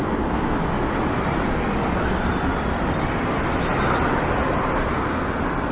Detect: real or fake real